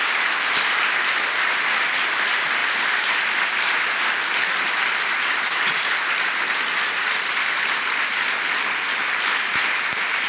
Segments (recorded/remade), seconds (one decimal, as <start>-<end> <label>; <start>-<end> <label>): 0.0-10.3 recorded